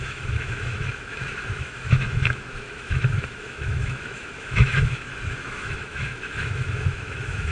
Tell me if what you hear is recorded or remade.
remade